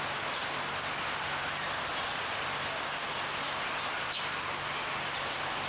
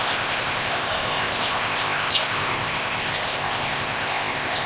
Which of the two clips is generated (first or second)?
second